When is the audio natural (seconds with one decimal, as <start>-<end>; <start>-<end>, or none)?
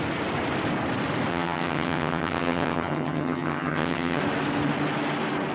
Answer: 0.0-1.3; 4.2-5.5